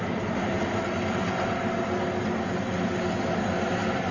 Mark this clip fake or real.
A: real